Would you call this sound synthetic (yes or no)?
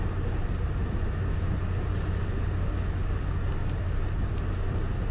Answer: no